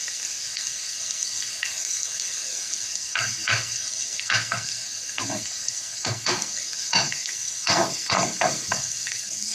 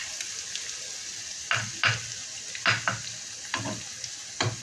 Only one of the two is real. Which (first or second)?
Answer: second